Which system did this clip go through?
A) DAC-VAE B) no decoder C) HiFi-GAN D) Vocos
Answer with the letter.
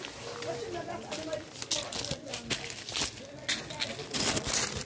B